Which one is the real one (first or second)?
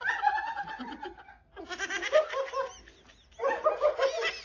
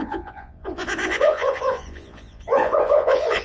first